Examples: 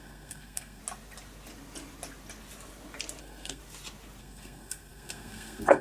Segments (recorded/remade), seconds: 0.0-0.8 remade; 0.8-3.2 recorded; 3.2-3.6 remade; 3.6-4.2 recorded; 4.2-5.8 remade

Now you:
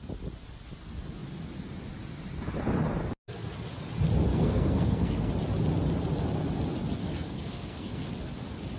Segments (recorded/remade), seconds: 0.0-4.3 recorded; 4.3-5.3 remade; 5.3-7.0 recorded; 7.0-8.1 remade; 8.1-8.8 recorded

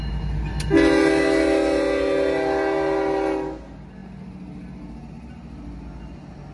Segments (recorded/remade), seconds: 0.0-6.5 recorded

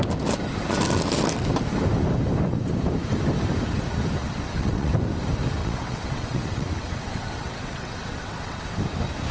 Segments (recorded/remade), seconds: 0.0-4.2 recorded; 4.2-4.9 remade; 4.9-5.6 recorded; 5.6-8.6 remade; 8.6-9.3 recorded